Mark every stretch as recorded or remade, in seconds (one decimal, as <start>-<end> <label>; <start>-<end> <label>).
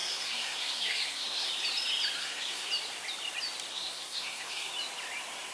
0.0-1.5 remade; 1.5-2.2 recorded; 2.2-2.7 remade; 2.7-3.7 recorded; 3.7-4.7 remade; 4.7-5.5 recorded